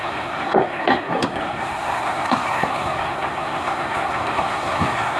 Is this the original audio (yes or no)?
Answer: no